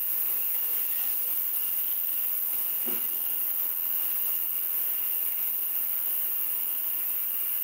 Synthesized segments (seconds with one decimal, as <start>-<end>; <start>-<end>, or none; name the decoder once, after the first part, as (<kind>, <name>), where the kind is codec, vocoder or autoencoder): none